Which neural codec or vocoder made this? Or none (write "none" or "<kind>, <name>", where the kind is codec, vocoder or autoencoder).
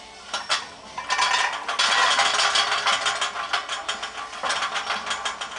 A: none